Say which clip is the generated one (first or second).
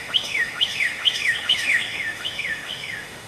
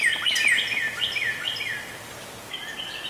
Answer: first